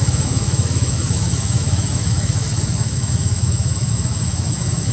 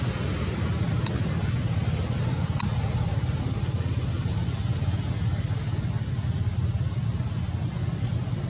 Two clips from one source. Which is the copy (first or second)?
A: first